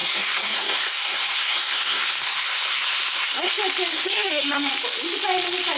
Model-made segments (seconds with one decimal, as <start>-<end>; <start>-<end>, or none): 0.0-3.5; 3.9-4.7